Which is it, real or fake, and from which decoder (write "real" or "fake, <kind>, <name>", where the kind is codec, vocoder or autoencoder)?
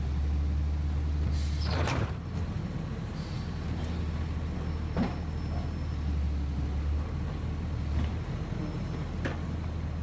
real